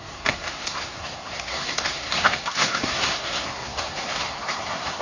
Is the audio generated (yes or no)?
yes